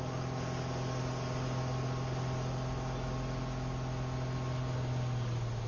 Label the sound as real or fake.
real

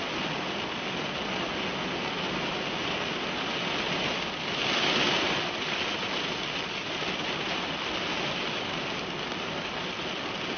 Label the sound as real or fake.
real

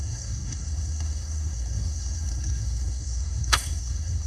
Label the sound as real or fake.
fake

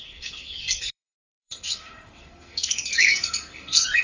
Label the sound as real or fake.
fake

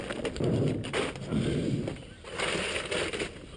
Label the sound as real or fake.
real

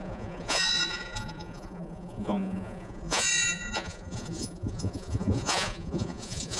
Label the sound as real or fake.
fake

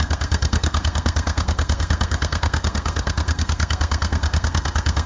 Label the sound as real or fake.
fake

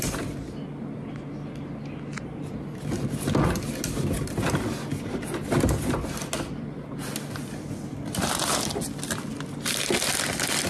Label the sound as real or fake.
real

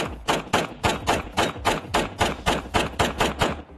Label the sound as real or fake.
fake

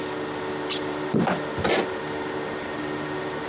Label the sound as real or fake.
real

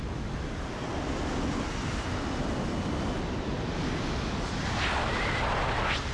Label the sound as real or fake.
real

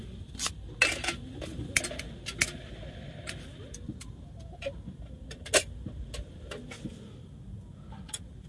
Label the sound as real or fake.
real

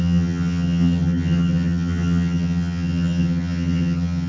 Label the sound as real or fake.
fake